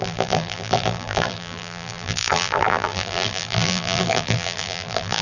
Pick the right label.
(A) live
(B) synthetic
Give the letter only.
B